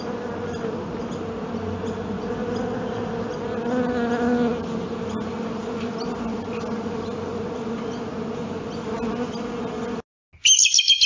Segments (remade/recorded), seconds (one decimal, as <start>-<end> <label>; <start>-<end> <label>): 0.0-11.1 recorded